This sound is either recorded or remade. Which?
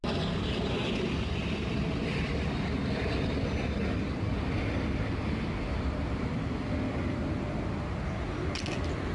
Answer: recorded